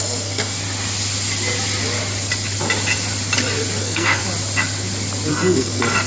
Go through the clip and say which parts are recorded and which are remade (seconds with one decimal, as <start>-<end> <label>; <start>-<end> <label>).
0.0-0.6 remade; 0.6-3.8 recorded; 3.8-4.2 remade; 4.2-5.3 recorded; 5.3-6.1 remade